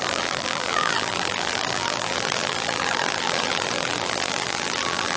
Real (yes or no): no